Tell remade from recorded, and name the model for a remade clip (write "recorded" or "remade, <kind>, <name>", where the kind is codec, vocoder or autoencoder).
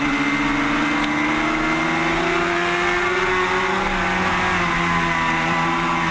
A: recorded